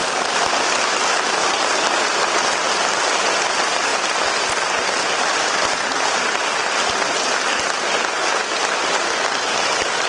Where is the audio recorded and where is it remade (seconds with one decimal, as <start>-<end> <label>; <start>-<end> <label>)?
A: 0.0-10.1 recorded